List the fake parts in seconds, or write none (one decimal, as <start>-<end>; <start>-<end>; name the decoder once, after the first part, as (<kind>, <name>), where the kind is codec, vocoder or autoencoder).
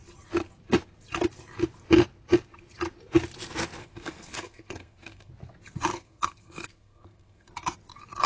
3.8-5.3 (codec, SNAC); 5.9-7.5